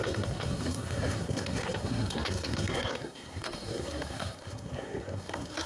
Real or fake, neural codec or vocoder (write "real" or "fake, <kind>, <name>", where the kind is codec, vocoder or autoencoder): fake, codec, SNAC